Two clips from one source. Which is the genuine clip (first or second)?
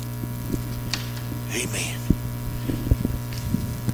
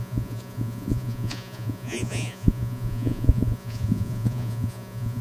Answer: first